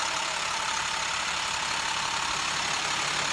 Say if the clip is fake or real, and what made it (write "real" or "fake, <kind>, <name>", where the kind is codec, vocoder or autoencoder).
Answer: fake, vocoder, BigVGAN v2